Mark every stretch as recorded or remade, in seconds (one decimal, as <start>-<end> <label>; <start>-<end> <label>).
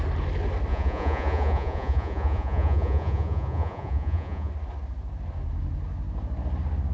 0.0-0.7 recorded; 0.7-4.5 remade; 4.5-6.9 recorded